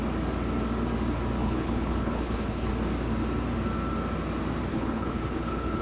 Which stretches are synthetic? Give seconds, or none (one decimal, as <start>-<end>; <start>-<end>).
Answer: 1.4-2.7; 4.7-5.8